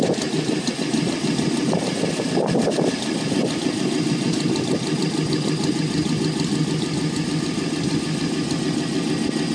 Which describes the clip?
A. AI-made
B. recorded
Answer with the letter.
B